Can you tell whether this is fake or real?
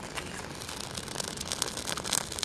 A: real